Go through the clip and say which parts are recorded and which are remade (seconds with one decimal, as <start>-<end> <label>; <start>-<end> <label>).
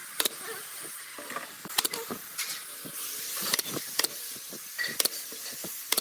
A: 0.0-6.0 recorded